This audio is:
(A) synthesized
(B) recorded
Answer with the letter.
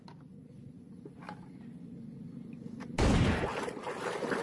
B